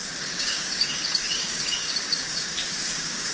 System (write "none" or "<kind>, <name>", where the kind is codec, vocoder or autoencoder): codec, DAC